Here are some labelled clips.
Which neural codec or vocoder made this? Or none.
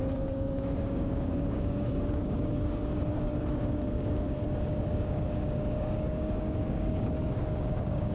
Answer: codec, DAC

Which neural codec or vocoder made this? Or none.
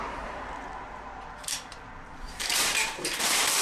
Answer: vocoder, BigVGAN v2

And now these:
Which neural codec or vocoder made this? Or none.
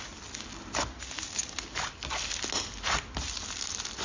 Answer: none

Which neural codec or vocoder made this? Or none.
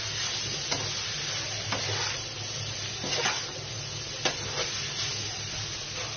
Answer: none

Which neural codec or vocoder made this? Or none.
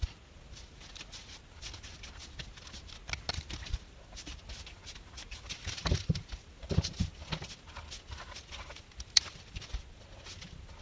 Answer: none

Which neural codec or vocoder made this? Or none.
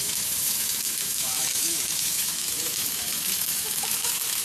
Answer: autoencoder, DAC-VAE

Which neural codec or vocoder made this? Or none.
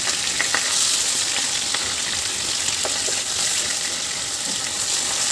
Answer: none